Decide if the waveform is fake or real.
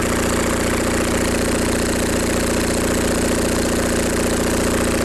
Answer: real